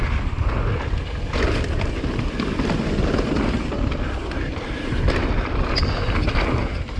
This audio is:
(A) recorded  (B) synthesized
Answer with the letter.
A